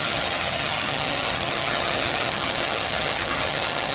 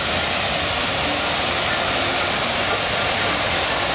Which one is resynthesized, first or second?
first